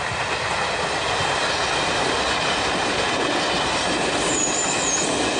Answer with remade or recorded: recorded